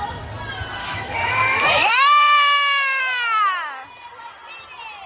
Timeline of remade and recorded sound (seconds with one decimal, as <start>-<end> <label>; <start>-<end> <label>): 0.0-0.8 recorded; 0.8-3.0 remade; 3.0-5.1 recorded